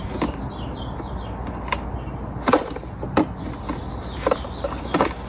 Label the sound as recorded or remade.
recorded